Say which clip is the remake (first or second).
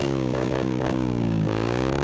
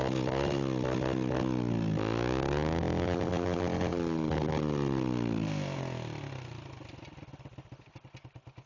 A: first